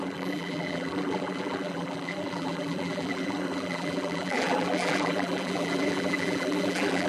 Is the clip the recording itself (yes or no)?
no